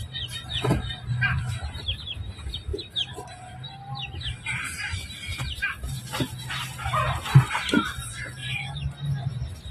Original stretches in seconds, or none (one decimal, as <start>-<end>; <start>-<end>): 8.4-9.7